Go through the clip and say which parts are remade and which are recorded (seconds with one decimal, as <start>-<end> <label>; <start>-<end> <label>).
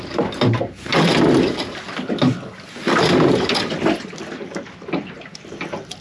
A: 0.0-6.0 recorded